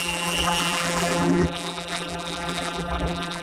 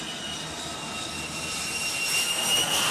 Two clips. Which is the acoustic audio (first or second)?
second